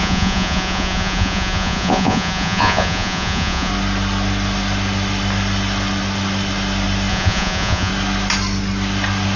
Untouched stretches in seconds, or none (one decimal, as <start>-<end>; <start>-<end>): 3.7-7.1; 7.9-9.4